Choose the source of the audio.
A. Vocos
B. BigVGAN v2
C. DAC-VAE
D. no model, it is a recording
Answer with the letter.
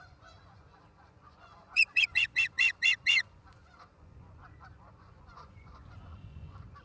A